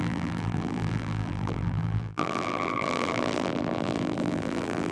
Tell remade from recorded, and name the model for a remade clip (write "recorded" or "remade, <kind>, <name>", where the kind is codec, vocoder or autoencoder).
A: remade, vocoder, BigVGAN v2